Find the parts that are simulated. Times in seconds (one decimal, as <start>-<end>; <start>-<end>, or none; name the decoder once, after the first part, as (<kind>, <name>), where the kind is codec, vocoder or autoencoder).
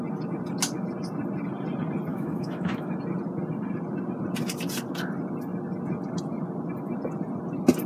2.1-2.9 (autoencoder, DAC-VAE)